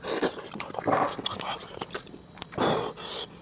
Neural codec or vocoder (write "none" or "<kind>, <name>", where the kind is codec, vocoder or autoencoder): none